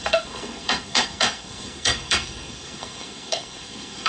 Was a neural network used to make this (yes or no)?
yes